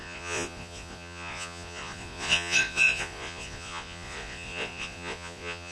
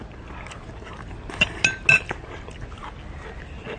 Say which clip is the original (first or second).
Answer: second